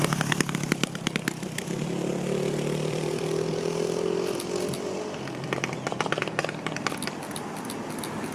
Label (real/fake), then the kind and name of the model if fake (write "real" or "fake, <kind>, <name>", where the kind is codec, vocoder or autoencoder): real